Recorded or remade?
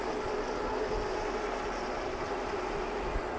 recorded